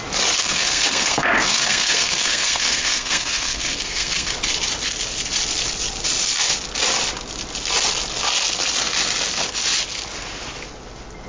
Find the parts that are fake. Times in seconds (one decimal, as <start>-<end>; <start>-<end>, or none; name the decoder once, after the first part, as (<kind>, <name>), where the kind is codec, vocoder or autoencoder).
0.4-4.3 (codec, SNAC)